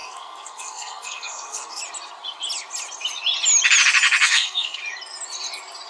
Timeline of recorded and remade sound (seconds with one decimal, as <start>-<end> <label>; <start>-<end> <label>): 0.0-1.8 remade; 1.8-4.2 recorded; 4.2-4.8 remade; 4.8-5.9 recorded